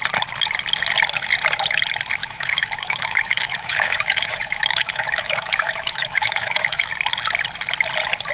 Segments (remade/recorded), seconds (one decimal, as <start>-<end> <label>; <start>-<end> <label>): 0.0-2.2 recorded; 2.2-6.9 remade; 6.9-8.3 recorded